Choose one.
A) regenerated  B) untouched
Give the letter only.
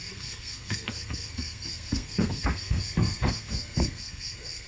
A